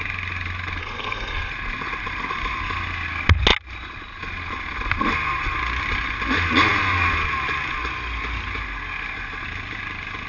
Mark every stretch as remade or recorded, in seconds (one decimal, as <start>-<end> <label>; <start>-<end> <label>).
0.0-0.8 recorded; 0.8-1.5 remade; 1.5-10.3 recorded